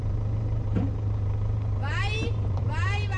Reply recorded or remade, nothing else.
remade